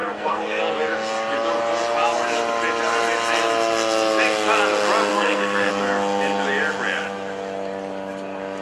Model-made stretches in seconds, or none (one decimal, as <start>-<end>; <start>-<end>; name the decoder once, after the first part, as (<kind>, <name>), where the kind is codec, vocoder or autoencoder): 0.0-0.6 (codec, SNAC); 5.1-5.7